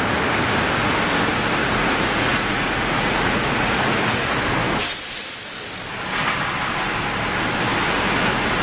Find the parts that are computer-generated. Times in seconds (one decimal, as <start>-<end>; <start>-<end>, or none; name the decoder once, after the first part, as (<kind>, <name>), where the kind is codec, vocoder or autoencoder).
1.6-4.4 (vocoder, Vocos)